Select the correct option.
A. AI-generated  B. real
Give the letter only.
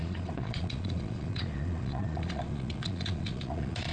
A